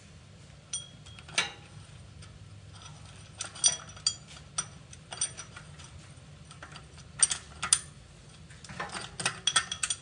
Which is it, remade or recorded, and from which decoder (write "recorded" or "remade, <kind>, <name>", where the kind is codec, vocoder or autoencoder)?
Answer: recorded